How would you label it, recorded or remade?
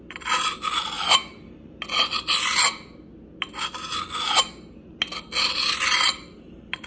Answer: recorded